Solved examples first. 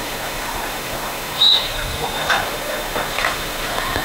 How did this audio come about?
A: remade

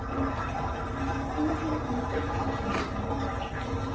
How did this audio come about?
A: recorded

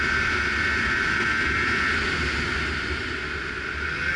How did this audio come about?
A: recorded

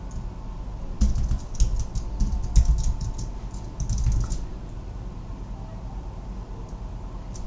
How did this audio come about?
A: recorded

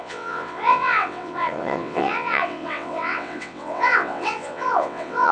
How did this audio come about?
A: remade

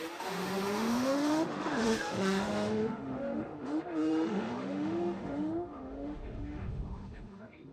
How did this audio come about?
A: remade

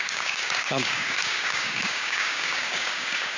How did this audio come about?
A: remade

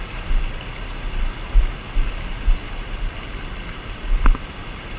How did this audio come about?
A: recorded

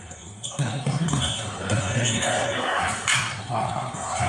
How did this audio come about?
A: remade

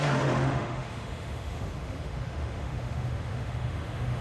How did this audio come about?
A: remade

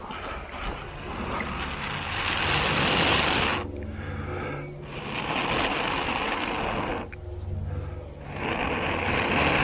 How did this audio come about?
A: recorded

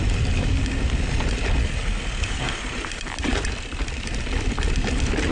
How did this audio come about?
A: recorded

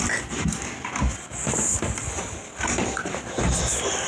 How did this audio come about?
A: recorded